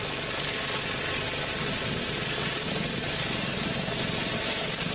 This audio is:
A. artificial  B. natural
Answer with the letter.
B